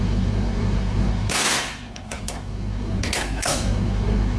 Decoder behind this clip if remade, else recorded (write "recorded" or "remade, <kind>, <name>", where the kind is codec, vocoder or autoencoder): remade, codec, SNAC